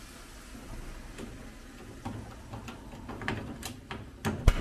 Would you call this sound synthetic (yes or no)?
no